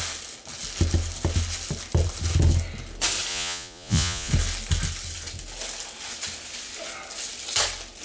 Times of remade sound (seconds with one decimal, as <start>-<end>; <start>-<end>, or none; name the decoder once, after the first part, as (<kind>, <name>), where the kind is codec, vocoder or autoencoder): 3.3-4.3 (vocoder, Vocos)